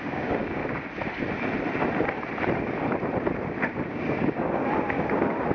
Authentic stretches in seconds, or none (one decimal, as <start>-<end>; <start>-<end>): 0.6-3.9; 4.6-5.5